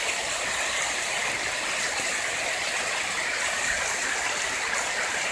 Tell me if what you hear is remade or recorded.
recorded